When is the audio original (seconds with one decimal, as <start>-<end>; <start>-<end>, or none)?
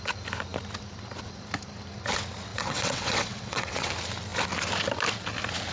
0.0-2.5; 3.9-5.7